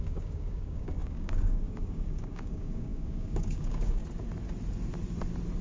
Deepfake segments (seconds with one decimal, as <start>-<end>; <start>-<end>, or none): 0.0-4.0